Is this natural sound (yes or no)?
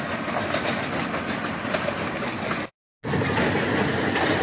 yes